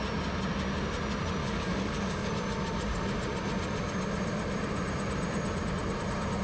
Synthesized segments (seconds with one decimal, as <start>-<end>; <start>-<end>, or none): 1.4-2.3